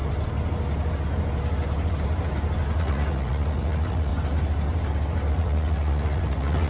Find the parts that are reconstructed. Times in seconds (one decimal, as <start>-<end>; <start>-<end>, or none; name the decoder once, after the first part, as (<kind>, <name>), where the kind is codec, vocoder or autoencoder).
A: 2.8-4.1 (vocoder, Vocos); 5.3-6.7